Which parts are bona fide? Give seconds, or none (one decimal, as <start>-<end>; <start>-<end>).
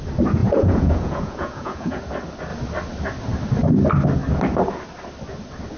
0.0-0.4; 2.0-5.8